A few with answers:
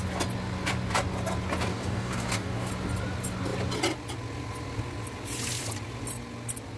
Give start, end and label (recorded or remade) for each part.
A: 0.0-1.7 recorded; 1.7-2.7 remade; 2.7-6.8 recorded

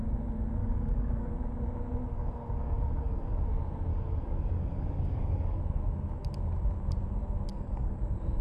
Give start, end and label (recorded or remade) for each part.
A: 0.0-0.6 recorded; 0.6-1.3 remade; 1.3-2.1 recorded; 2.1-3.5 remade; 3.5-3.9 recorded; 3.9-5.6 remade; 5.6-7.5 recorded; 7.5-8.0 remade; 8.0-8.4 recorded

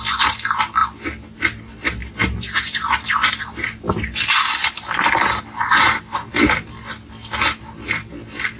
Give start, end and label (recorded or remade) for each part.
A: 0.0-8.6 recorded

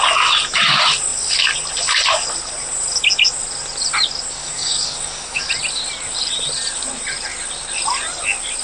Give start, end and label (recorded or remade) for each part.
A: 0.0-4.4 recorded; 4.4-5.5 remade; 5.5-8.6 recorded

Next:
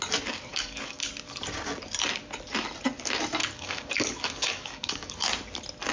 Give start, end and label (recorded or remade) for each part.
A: 0.0-0.5 recorded; 0.5-1.1 remade; 1.1-3.4 recorded; 3.4-5.2 remade; 5.2-5.9 recorded

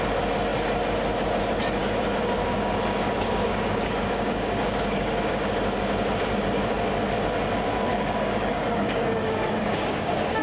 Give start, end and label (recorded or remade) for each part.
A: 0.0-1.8 recorded; 1.8-5.5 remade; 5.5-7.9 recorded; 7.9-10.4 remade